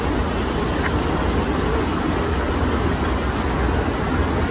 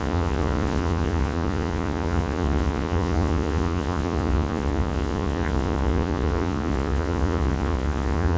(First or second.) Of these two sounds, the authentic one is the first